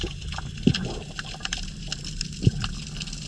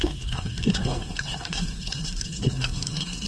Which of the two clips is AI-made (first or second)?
second